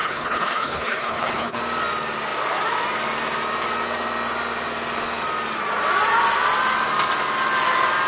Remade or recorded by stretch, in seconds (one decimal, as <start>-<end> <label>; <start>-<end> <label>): 0.0-1.6 remade; 1.6-8.1 recorded